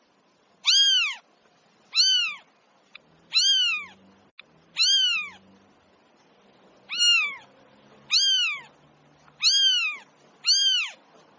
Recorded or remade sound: recorded